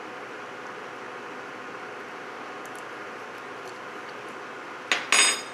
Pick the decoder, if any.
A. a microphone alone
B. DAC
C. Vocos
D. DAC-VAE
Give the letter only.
A